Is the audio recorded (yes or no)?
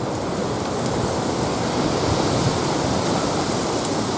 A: yes